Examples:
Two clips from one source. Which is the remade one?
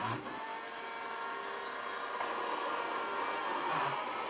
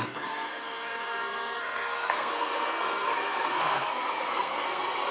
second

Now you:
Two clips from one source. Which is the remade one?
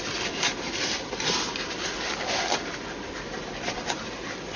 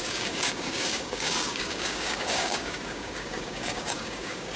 second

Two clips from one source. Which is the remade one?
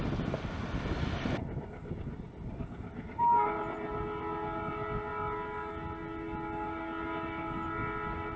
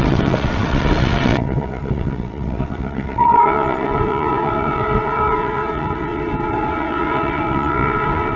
second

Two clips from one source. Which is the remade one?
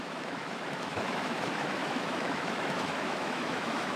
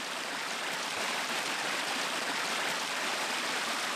first